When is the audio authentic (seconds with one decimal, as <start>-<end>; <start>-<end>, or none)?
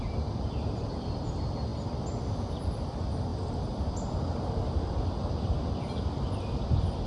0.0-7.1